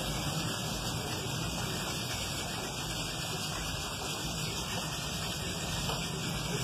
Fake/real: real